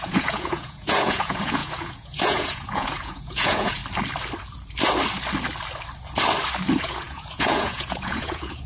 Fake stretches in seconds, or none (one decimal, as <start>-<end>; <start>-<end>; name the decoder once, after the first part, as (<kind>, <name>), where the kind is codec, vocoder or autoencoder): 0.0-3.8 (vocoder, Vocos); 6.8-8.7